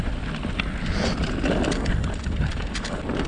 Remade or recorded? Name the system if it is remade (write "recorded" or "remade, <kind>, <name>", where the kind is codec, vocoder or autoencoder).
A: recorded